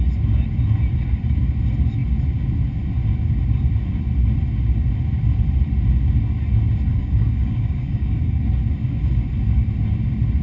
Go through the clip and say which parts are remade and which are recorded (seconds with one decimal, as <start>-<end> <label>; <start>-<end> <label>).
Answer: 0.0-6.9 recorded; 6.9-8.4 remade; 8.4-10.4 recorded